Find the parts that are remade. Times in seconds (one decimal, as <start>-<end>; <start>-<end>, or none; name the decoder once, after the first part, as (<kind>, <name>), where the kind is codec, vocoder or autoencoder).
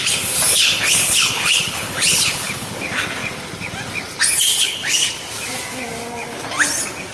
0.5-2.8 (codec, HILCodec); 4.5-5.2